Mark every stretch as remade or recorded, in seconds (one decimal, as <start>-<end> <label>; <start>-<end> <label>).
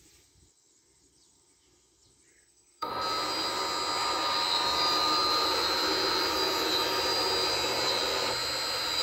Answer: 0.0-2.3 recorded; 2.3-2.9 remade; 2.9-9.0 recorded